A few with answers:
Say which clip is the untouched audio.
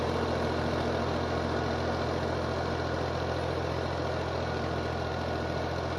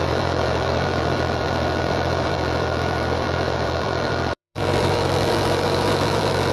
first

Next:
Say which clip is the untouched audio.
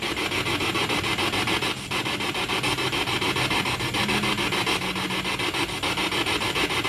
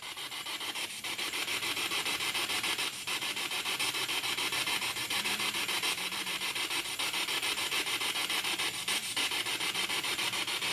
first